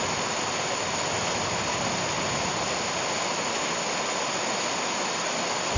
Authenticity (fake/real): real